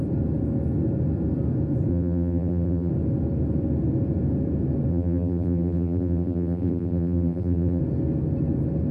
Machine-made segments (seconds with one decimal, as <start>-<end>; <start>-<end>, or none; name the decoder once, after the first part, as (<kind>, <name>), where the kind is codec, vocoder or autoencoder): 1.9-2.9 (vocoder, BigVGAN v2); 4.9-7.8